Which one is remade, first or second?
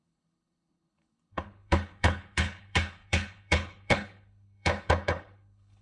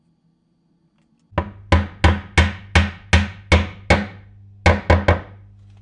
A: first